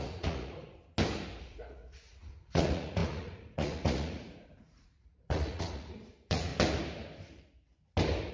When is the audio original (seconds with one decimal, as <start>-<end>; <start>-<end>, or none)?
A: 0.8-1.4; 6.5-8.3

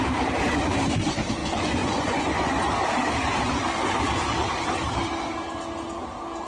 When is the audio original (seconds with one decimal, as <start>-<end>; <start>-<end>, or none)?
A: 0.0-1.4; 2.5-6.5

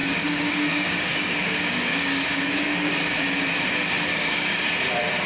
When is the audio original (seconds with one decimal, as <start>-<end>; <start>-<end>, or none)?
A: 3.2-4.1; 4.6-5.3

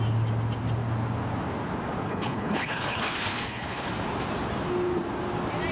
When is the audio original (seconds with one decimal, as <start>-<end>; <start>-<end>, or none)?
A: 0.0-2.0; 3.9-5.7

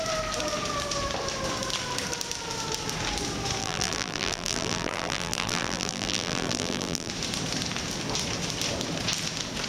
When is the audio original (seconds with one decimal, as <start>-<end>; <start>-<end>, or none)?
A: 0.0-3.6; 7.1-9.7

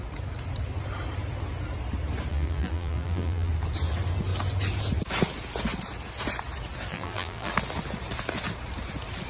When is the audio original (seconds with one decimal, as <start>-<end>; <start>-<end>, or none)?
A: 0.0-2.3; 3.5-6.9; 7.5-9.3

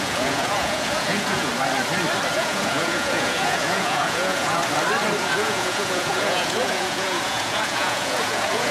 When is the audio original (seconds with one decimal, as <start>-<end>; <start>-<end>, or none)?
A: 1.5-2.3; 4.6-5.2